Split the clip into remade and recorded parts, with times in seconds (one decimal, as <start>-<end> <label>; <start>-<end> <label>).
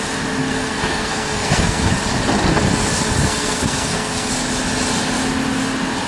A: 0.0-0.4 recorded; 0.4-1.9 remade; 1.9-3.2 recorded; 3.2-4.3 remade; 4.3-6.1 recorded